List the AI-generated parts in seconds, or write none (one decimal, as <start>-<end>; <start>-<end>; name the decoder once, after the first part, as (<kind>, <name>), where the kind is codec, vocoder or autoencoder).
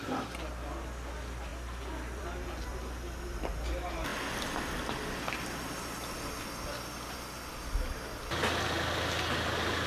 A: none